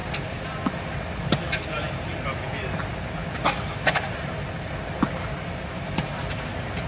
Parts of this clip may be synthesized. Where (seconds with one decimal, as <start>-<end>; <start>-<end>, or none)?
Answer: none